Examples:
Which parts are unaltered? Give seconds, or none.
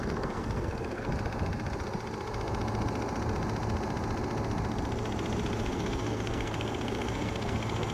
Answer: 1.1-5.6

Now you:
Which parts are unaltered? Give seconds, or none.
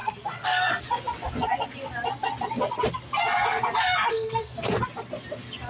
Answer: 0.8-4.1; 4.7-5.7